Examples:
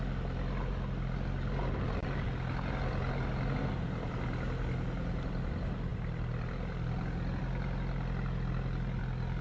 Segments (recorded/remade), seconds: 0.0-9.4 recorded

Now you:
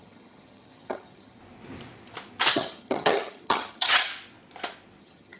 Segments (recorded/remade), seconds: 0.0-1.4 remade; 1.4-2.5 recorded; 2.5-4.1 remade; 4.1-5.0 recorded; 5.0-5.4 remade

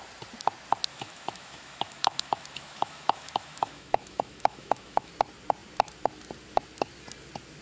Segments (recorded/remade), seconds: 0.0-0.9 recorded; 0.9-5.1 remade; 5.1-7.6 recorded

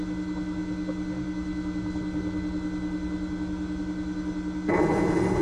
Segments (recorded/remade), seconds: 0.0-5.4 recorded

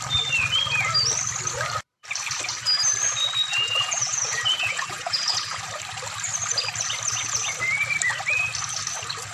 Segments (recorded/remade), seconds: 0.0-3.5 recorded; 3.5-5.6 remade; 5.6-9.3 recorded